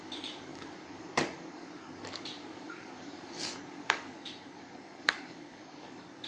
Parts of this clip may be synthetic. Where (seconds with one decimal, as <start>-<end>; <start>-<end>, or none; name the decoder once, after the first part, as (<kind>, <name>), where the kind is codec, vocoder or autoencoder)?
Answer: 0.0-6.3 (codec, DAC)